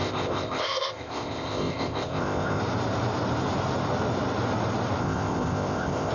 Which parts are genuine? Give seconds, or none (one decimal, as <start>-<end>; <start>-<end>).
2.6-5.0